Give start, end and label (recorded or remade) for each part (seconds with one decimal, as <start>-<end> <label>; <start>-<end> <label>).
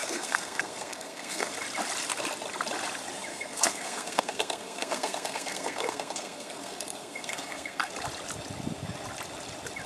0.0-1.5 remade; 1.5-3.3 recorded; 3.3-7.9 remade; 7.9-9.9 recorded